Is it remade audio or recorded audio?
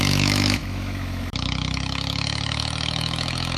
remade